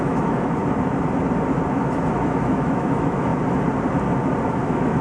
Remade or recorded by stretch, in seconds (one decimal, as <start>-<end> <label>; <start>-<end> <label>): 0.0-0.6 remade; 0.6-1.7 recorded; 1.7-3.3 remade; 3.3-4.5 recorded; 4.5-5.0 remade